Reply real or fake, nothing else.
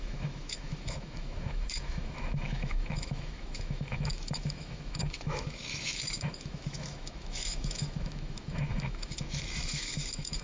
fake